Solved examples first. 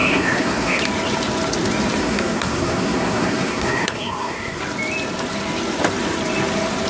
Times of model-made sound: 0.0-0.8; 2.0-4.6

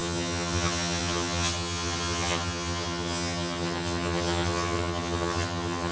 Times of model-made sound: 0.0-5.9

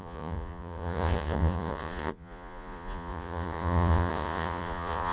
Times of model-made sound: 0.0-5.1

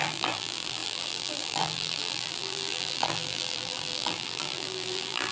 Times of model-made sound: 0.0-5.3

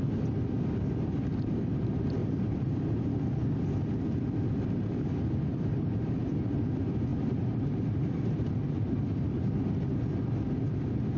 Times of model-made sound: 2.2-2.8; 5.5-6.3; 7.1-10.3

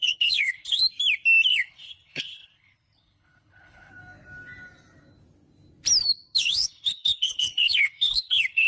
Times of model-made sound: 0.0-0.8; 1.5-3.9; 6.4-8.7

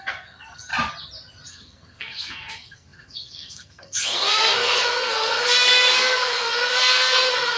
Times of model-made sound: 0.0-0.7; 1.5-7.6

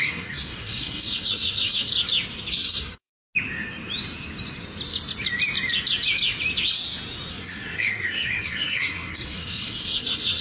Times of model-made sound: 0.0-1.9; 2.5-3.1; 7.3-10.4